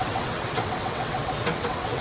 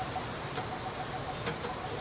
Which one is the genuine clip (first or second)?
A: second